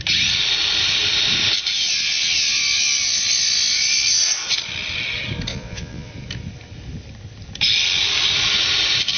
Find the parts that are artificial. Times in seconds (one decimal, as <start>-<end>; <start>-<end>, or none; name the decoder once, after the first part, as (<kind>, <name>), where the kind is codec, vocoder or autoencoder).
5.5-6.1 (vocoder, Vocos)